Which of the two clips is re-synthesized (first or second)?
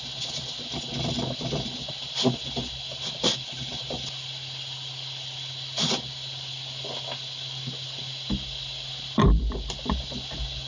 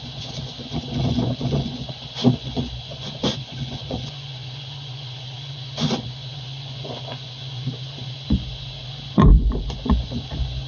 second